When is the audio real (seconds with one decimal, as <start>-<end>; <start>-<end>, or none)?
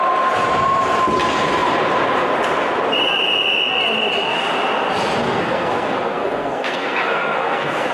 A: 0.0-5.2